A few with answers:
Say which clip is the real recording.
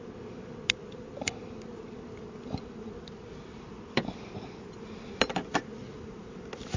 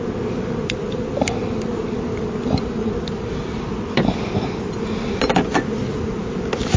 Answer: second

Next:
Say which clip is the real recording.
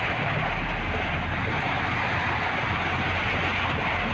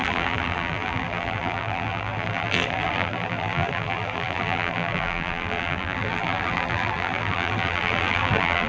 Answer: first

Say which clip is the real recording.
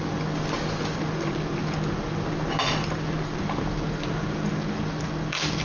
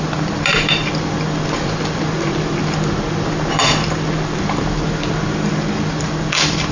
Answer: first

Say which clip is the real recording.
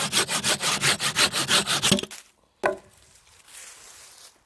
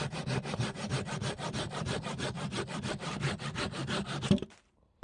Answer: first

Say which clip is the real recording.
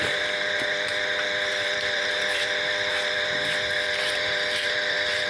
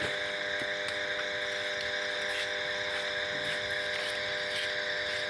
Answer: second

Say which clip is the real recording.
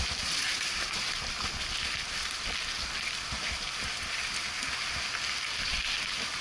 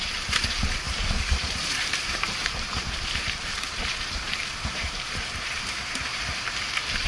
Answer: first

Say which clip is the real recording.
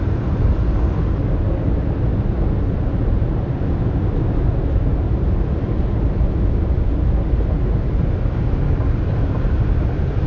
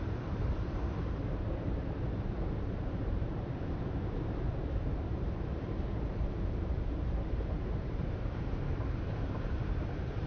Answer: first